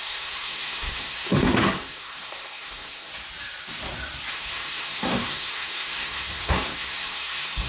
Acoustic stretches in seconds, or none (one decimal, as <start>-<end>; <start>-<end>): 3.1-4.3